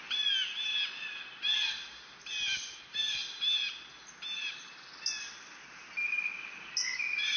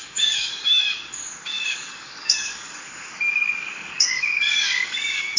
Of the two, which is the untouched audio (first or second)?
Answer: first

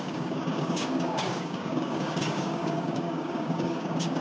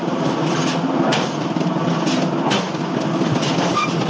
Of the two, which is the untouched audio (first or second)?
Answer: second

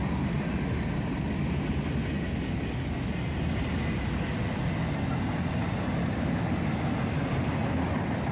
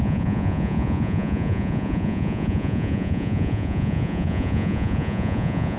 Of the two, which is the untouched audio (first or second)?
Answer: first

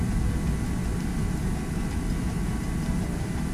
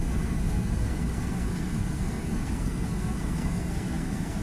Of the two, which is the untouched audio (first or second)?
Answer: first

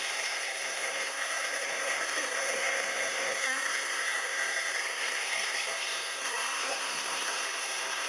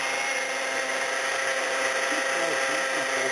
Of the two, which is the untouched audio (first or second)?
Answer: second